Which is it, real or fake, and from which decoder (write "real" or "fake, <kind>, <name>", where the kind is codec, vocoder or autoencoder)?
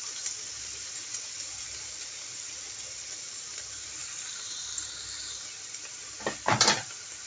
real